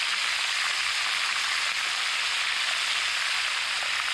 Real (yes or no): yes